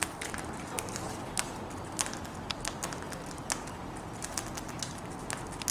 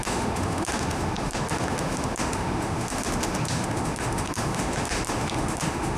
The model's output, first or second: second